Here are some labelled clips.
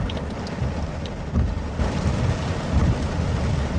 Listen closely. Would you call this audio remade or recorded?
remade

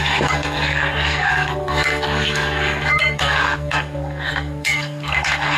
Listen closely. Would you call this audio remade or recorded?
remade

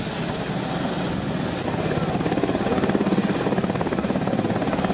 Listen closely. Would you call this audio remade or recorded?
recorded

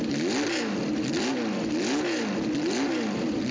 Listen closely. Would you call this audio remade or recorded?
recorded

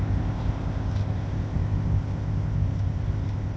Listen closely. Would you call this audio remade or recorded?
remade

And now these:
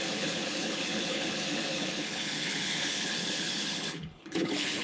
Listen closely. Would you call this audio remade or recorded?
remade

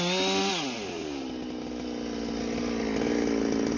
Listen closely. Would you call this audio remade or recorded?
recorded